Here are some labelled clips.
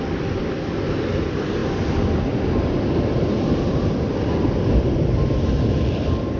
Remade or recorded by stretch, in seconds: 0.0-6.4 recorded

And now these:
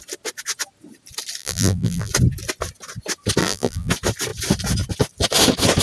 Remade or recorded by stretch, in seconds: 0.0-1.4 recorded; 1.4-2.1 remade; 2.1-3.4 recorded; 3.4-3.9 remade; 3.9-5.8 recorded

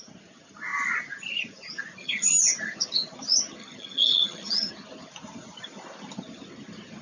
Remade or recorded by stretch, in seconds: 0.0-2.0 recorded; 2.0-2.5 remade; 2.5-3.6 recorded; 3.6-4.7 remade; 4.7-7.0 recorded

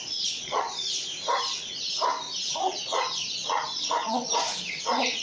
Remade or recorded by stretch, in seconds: 0.0-1.1 remade; 1.1-2.4 recorded; 2.4-5.2 remade

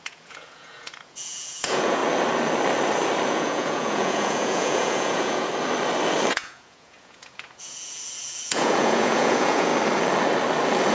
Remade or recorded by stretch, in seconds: 0.0-2.0 remade; 2.0-3.3 recorded; 3.3-5.5 remade; 5.5-6.3 recorded; 6.3-9.7 remade; 9.7-10.9 recorded

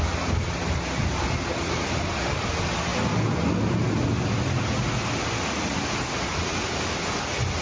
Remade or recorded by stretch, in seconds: 0.0-7.6 recorded

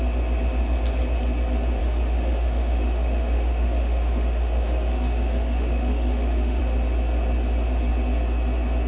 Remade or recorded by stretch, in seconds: 0.0-1.8 recorded; 1.8-6.6 remade; 6.6-8.9 recorded